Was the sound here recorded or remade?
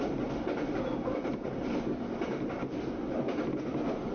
recorded